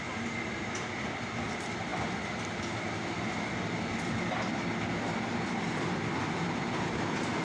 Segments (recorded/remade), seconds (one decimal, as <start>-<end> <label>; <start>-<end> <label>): 0.0-7.4 recorded